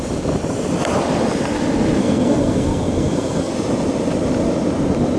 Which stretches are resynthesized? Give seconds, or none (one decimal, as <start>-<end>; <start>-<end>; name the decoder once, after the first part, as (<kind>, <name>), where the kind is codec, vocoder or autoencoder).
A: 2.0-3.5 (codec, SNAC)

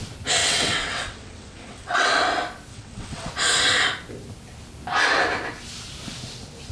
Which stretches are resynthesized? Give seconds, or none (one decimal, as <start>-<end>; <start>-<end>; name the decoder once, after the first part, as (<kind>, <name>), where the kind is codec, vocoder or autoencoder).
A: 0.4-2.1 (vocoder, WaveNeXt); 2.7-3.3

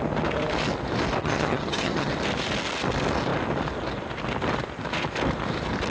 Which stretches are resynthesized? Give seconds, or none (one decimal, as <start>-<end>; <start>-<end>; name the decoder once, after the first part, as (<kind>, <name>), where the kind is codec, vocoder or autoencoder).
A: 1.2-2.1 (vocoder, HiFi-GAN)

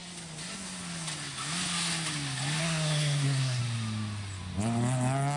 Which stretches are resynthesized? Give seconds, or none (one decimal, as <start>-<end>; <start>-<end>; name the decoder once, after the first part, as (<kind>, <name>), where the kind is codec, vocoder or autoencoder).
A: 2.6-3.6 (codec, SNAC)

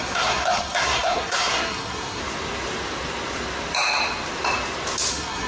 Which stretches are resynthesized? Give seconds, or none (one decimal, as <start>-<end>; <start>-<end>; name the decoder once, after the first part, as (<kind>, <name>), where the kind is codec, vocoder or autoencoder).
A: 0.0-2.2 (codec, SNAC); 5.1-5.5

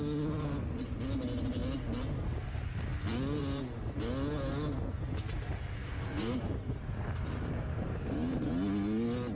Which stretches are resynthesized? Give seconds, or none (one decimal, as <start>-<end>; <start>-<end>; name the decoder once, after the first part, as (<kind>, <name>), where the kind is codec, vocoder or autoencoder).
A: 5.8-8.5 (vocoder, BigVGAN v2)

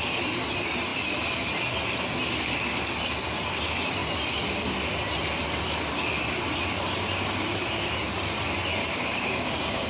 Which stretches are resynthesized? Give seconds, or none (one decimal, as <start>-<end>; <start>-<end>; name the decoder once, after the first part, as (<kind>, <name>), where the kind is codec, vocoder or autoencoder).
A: 8.8-9.9 (codec, DAC)